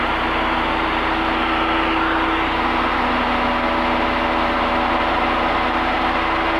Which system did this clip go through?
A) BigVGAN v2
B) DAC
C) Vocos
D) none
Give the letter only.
D